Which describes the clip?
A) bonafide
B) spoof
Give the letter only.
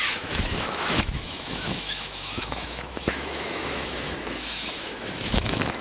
B